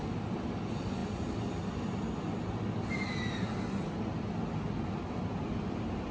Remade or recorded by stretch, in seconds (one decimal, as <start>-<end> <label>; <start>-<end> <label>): 0.0-6.1 recorded